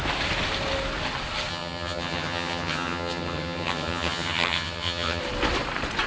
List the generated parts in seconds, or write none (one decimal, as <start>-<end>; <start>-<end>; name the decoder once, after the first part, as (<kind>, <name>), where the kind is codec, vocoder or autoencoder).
1.5-5.2 (vocoder, HiFi-GAN)